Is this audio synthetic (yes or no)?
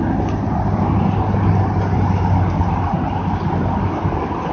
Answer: no